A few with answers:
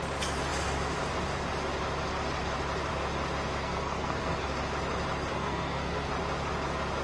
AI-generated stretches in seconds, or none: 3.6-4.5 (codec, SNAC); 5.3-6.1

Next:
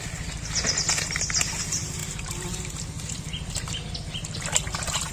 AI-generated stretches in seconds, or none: none

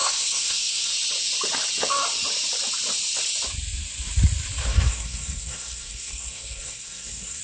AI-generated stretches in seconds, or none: 0.0-0.9 (codec, SNAC); 4.7-7.4

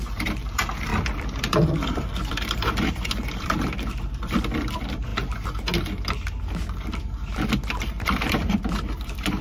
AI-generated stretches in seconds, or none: 0.0-5.1 (vocoder, BigVGAN v2); 7.8-9.4

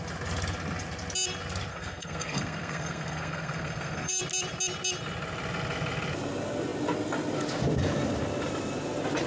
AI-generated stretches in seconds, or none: 1.7-4.2 (codec, SNAC)